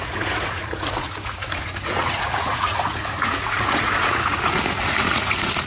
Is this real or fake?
fake